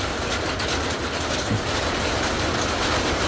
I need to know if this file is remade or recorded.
recorded